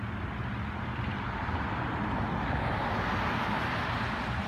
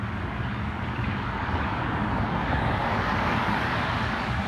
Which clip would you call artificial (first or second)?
second